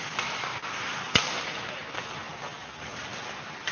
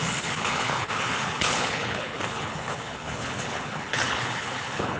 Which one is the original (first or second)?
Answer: first